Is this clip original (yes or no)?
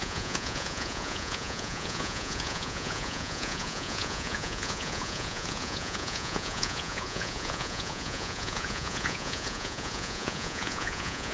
no